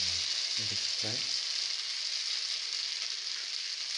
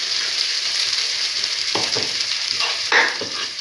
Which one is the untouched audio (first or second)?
first